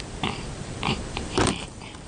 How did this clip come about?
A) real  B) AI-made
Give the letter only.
B